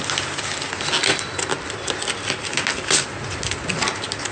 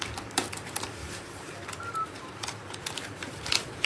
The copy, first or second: second